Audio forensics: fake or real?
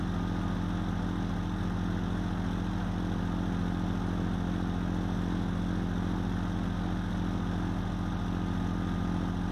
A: real